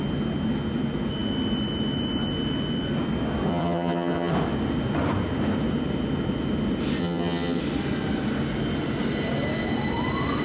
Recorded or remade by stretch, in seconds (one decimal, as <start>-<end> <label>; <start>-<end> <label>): 0.0-3.5 recorded; 3.5-4.3 remade; 4.3-7.0 recorded; 7.0-7.6 remade; 7.6-10.4 recorded